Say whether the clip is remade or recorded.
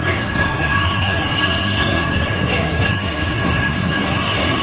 remade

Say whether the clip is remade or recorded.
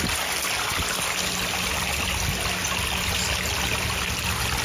recorded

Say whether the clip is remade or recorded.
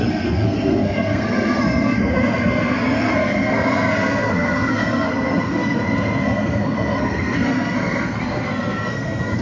remade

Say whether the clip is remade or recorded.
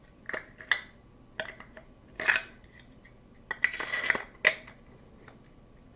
recorded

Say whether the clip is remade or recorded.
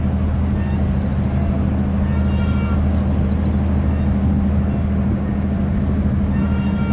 recorded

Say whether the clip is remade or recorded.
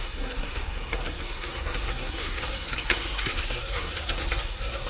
remade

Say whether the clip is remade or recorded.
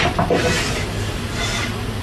recorded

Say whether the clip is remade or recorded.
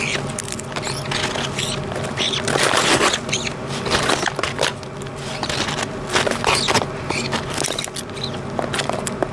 recorded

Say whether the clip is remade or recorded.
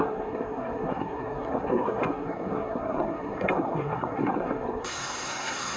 remade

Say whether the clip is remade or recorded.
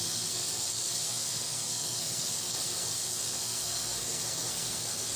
remade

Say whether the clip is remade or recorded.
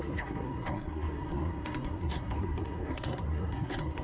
remade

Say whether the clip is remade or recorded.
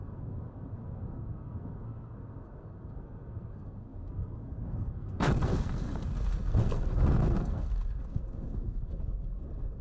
remade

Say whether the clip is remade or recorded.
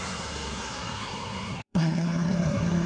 remade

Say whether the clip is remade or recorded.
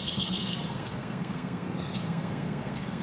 remade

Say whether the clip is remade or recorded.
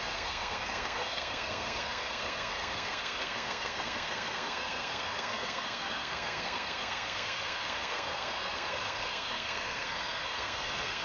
remade